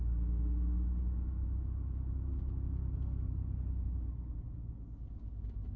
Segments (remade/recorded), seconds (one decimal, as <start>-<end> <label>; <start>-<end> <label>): 0.0-5.8 recorded